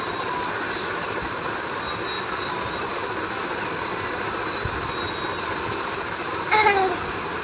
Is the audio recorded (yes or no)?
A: yes